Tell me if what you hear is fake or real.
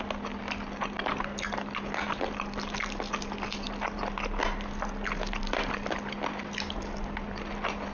real